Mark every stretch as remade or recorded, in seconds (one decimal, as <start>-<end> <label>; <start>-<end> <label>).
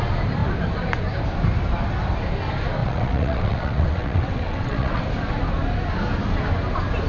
0.0-2.8 recorded; 2.8-5.0 remade; 5.0-7.1 recorded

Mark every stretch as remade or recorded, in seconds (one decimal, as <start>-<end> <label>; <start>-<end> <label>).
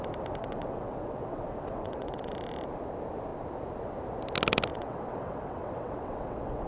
0.0-0.4 recorded; 0.4-2.3 remade; 2.3-4.7 recorded; 4.7-6.7 remade